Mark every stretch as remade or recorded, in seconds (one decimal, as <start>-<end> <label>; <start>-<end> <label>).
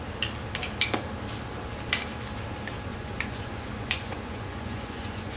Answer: 0.0-2.9 recorded; 2.9-5.4 remade